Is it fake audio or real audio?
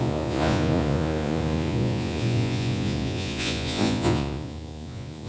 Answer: fake